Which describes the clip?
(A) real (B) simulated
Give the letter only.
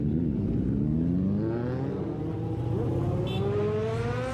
A